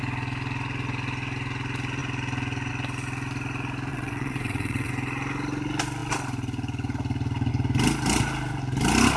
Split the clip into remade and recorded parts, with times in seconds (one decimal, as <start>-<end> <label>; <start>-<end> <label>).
0.0-3.9 recorded; 3.9-4.9 remade; 4.9-9.2 recorded